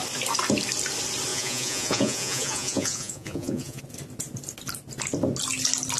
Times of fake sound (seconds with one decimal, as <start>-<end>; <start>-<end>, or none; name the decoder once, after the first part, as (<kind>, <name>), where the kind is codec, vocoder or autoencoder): 1.3-3.8 (vocoder, Vocos)